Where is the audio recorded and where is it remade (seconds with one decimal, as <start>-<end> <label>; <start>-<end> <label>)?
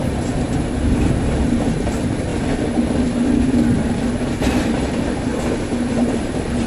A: 0.0-0.7 remade; 0.7-1.2 recorded; 1.2-2.3 remade; 2.3-4.3 recorded; 4.3-5.3 remade; 5.3-6.2 recorded; 6.2-6.7 remade